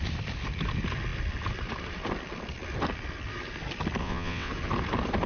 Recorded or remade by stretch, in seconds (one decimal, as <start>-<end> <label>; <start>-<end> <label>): 0.0-4.0 recorded; 4.0-4.5 remade; 4.5-5.3 recorded